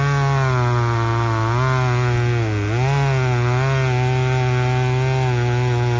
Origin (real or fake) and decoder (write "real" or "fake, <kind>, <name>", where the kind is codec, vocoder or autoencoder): real